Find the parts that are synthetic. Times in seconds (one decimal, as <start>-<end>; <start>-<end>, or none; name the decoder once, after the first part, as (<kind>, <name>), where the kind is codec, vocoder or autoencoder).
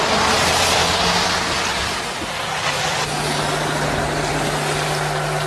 none